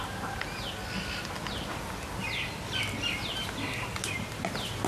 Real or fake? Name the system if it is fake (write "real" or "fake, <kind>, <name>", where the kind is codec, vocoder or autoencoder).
real